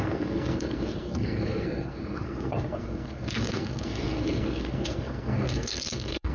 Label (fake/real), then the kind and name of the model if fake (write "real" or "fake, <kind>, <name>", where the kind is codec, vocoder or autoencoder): fake, codec, SNAC